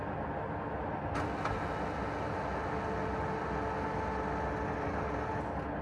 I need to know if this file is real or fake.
real